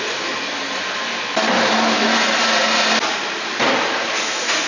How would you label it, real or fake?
real